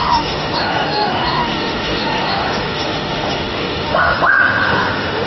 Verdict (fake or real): fake